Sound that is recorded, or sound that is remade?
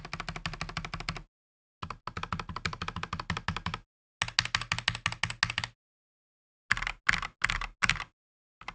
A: recorded